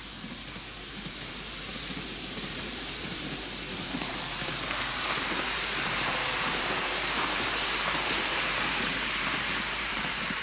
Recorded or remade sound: remade